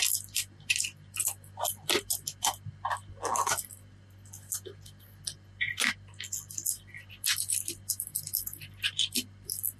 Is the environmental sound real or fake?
real